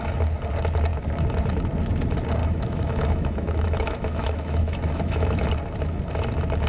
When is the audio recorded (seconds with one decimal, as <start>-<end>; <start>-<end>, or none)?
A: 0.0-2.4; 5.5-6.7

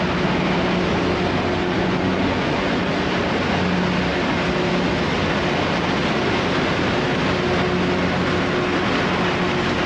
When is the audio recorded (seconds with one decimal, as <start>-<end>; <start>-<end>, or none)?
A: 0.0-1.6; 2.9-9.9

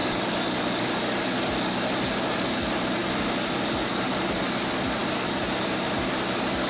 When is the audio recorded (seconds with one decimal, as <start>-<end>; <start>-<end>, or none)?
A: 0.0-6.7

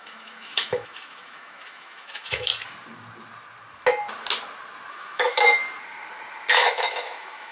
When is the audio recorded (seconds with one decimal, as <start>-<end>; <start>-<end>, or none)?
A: 2.5-4.9; 5.6-6.5